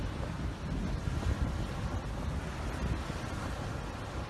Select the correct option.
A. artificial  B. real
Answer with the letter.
B